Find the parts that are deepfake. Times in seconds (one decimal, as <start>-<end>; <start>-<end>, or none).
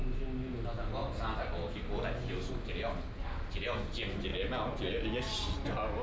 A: none